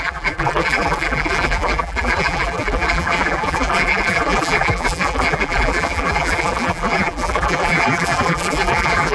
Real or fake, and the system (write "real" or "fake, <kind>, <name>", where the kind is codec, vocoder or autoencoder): fake, vocoder, BigVGAN v2